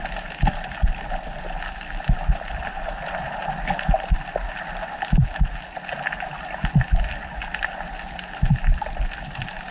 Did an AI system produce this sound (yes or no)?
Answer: no